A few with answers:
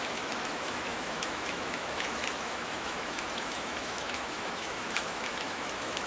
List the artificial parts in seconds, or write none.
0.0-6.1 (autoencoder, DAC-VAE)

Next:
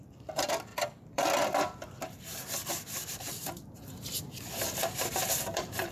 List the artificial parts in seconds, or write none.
0.0-5.9 (vocoder, BigVGAN v2)

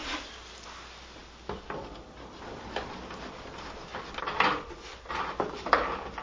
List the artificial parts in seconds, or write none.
0.0-0.5 (vocoder, BigVGAN v2)

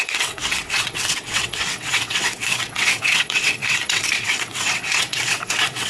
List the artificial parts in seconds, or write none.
0.0-5.9 (vocoder, WaveNeXt)